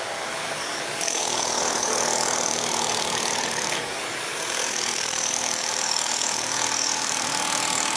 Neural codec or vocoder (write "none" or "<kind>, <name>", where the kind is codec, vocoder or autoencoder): codec, DAC